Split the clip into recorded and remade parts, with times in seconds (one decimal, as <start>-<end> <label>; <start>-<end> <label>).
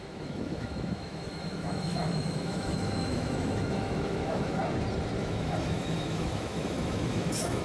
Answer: 0.0-4.6 remade; 4.6-5.2 recorded; 5.2-7.6 remade